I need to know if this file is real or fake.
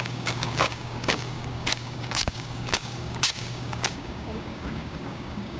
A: fake